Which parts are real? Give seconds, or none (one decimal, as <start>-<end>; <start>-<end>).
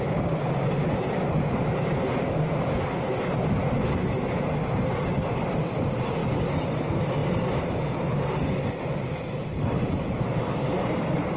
0.0-11.4